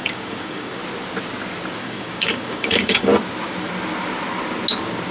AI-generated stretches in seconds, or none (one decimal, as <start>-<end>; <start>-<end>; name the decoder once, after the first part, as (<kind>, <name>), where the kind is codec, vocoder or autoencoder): 0.0-0.8 (codec, DAC); 1.8-3.1